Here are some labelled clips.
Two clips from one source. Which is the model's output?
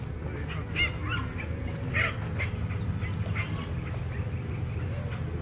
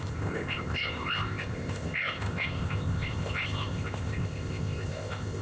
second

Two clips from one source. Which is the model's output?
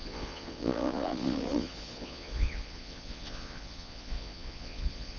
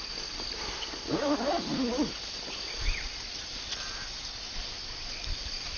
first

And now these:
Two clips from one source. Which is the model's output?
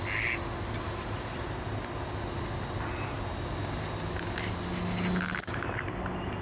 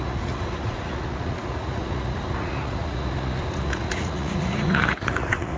second